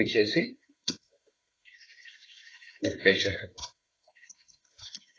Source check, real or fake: fake